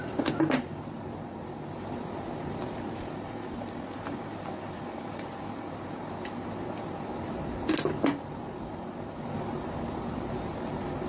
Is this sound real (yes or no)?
yes